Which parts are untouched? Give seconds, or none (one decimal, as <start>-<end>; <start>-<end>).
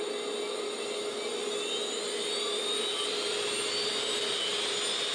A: 0.0-5.1